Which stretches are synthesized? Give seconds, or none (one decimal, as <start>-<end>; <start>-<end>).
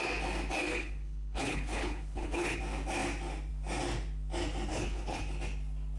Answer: 0.7-2.6; 4.7-5.2